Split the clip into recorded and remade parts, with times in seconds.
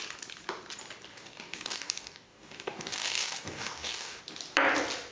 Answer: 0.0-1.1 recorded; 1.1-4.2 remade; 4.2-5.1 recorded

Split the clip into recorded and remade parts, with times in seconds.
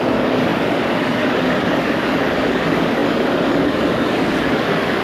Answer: 0.0-5.0 remade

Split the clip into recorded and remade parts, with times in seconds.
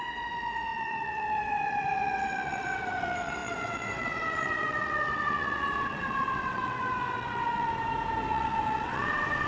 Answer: 0.0-7.7 remade; 7.7-8.3 recorded; 8.3-9.5 remade